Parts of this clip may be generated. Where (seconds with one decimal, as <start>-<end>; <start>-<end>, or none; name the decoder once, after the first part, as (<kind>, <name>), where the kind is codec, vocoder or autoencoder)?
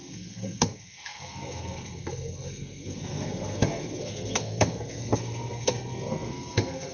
0.0-6.9 (codec, SNAC)